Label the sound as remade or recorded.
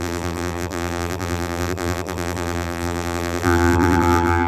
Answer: remade